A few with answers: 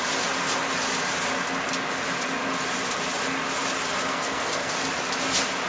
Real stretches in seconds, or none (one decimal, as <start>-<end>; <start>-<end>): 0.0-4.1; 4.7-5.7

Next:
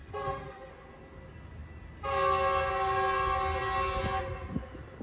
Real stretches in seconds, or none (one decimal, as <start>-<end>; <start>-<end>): 0.7-5.0

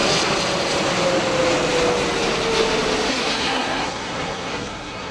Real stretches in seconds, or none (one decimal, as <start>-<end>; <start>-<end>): 0.0-3.1

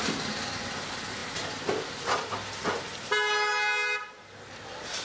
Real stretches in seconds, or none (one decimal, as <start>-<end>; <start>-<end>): 0.0-5.0

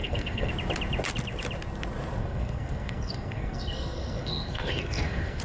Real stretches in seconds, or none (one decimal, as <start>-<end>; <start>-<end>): 0.5-2.2

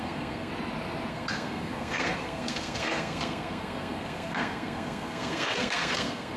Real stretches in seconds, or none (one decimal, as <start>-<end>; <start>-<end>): 0.5-1.1